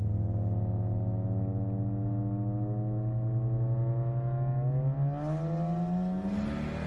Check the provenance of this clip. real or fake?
real